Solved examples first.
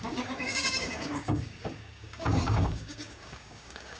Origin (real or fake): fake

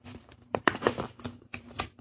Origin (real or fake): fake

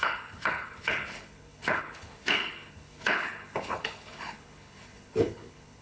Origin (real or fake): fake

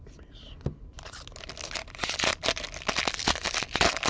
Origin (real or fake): real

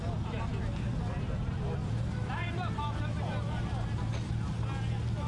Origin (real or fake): real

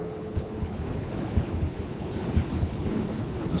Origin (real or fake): fake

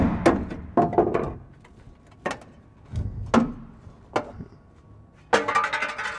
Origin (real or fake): real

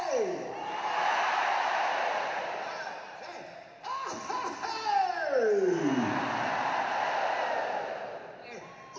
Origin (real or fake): real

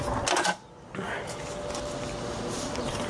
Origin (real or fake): real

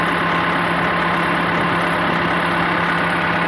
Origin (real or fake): real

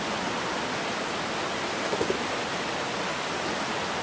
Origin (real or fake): real